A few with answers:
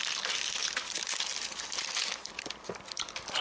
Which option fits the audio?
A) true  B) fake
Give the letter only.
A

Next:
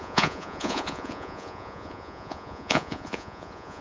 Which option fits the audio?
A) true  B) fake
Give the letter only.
B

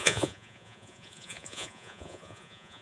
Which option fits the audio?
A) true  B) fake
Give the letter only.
B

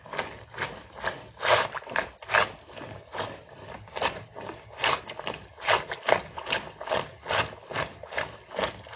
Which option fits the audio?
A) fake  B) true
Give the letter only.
B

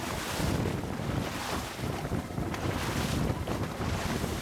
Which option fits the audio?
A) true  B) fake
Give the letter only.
A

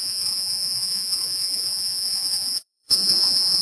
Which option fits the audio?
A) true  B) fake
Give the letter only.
B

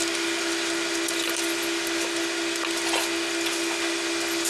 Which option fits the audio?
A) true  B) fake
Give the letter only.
A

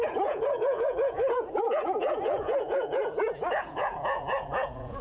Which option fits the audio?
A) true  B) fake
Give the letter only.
B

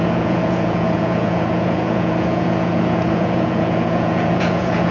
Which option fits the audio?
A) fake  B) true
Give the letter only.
A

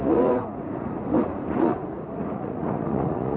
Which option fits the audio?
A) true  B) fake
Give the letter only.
B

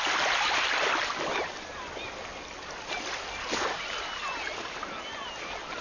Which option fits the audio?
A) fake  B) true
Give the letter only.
B